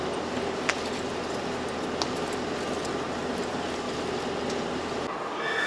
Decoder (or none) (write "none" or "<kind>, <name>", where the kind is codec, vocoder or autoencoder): none